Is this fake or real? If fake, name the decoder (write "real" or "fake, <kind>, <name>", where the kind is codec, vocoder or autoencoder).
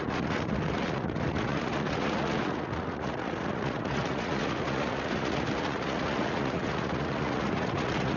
fake, vocoder, Vocos